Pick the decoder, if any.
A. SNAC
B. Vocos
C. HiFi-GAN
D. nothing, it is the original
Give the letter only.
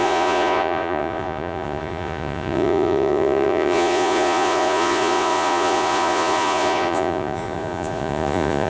B